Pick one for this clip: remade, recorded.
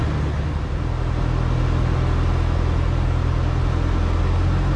recorded